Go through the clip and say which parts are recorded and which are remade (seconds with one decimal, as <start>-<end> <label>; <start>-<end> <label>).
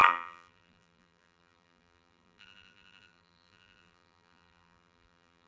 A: 0.0-5.5 remade